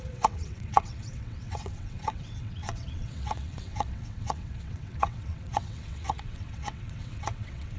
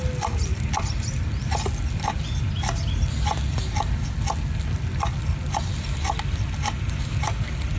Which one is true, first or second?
second